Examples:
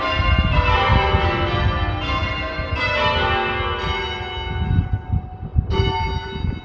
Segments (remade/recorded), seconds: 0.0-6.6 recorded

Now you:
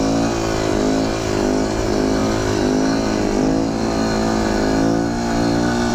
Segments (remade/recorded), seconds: 0.0-5.9 recorded